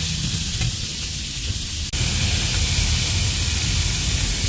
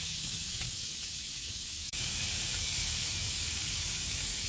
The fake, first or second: second